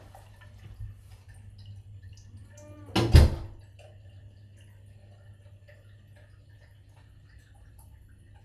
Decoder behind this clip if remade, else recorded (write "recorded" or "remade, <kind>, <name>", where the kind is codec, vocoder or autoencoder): recorded